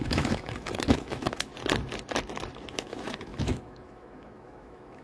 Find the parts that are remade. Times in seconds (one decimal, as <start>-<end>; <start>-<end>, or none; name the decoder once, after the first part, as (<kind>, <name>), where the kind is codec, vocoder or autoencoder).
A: 0.0-1.5 (autoencoder, DAC-VAE); 2.7-5.0